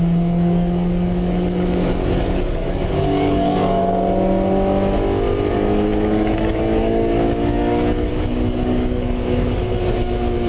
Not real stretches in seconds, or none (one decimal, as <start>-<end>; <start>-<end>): 0.0-3.8; 5.5-10.5